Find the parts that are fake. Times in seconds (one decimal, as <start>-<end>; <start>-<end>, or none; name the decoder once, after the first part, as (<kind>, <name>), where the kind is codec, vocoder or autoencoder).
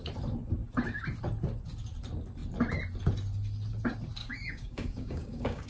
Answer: 4.2-5.7 (codec, DAC)